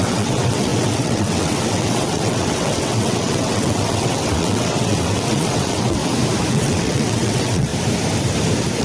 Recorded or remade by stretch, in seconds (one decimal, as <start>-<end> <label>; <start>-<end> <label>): 0.0-6.0 remade; 6.0-6.5 recorded; 6.5-7.7 remade; 7.7-8.8 recorded